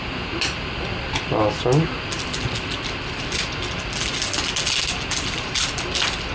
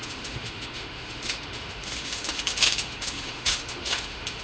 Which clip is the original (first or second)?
first